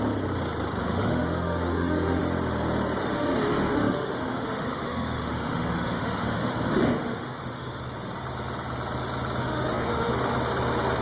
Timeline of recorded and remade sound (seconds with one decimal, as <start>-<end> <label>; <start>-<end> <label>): 0.0-0.8 recorded; 0.8-2.2 remade; 2.2-3.0 recorded; 3.0-7.8 remade; 7.8-9.4 recorded; 9.4-10.1 remade; 10.1-11.0 recorded